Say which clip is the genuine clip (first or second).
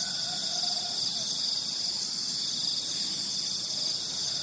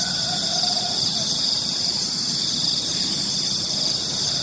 first